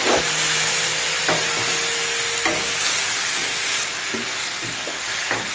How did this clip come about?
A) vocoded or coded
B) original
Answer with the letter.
B